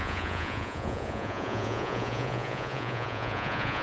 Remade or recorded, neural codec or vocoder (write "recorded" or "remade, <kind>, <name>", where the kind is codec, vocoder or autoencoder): remade, vocoder, Vocos